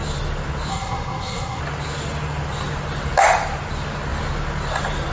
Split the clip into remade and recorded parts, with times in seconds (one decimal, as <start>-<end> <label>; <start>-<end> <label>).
0.0-0.7 recorded; 0.7-1.6 remade; 1.6-5.1 recorded